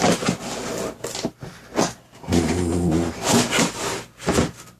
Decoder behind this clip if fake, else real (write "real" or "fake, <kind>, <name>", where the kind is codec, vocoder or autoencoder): real